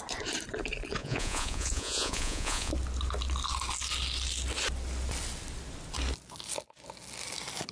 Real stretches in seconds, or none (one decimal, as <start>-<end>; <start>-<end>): 0.0-1.0; 2.7-7.7